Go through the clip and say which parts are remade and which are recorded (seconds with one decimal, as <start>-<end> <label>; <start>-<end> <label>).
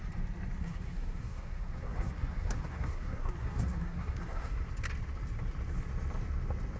0.0-0.6 recorded; 0.6-4.7 remade; 4.7-6.8 recorded